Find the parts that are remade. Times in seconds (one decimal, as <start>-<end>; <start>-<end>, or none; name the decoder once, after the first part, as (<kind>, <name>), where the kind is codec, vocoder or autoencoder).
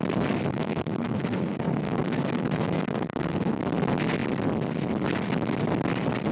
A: 0.5-3.6 (codec, SNAC)